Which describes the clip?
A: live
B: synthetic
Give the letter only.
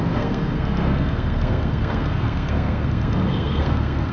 B